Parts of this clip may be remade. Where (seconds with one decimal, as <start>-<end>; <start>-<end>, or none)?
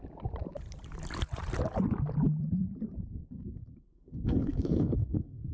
3.1-5.5